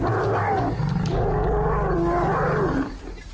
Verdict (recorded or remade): recorded